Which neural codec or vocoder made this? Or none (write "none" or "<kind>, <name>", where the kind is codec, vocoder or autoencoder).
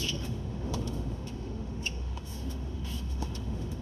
autoencoder, DAC-VAE